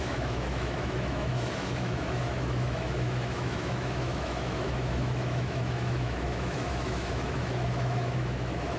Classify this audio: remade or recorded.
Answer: remade